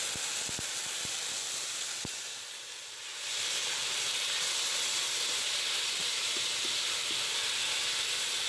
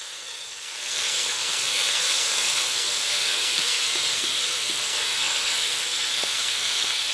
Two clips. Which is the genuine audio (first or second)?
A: first